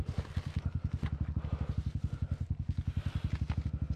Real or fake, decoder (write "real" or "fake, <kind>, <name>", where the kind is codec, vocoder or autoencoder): real